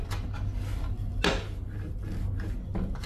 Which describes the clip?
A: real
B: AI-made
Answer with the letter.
A